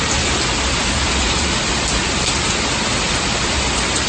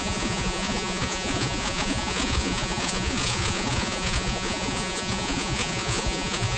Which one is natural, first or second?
first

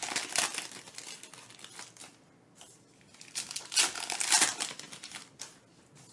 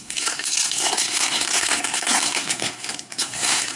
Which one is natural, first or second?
first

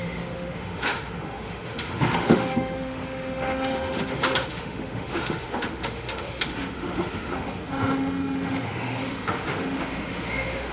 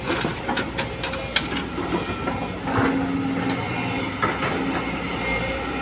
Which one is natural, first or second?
second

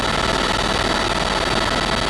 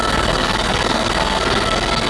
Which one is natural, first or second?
first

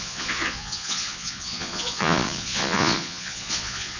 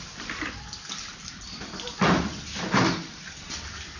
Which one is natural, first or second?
second